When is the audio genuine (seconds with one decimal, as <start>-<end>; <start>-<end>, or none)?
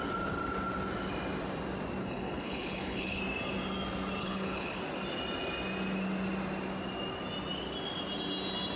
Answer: 0.0-2.0; 3.2-4.2; 4.8-8.8